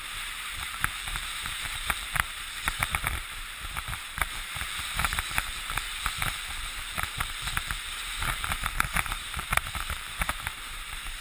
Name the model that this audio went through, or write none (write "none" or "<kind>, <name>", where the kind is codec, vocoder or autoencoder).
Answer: vocoder, BigVGAN v2